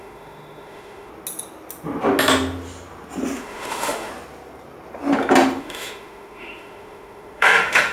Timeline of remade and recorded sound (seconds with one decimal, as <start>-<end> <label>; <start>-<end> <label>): 0.0-1.1 remade; 1.1-3.4 recorded; 3.4-4.1 remade; 4.1-5.6 recorded; 5.6-7.9 remade